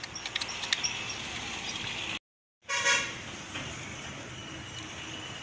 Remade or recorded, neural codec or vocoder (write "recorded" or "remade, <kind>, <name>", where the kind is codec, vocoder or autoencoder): recorded